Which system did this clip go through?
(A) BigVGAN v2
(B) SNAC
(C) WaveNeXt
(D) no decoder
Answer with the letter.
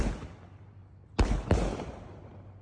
D